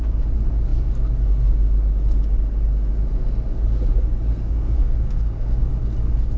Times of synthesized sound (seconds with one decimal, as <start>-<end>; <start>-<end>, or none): 4.3-5.7